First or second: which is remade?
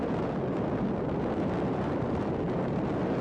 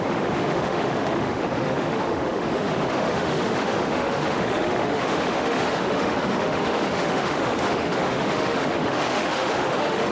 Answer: second